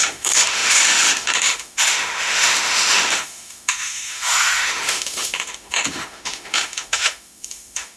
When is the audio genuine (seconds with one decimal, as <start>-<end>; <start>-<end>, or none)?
none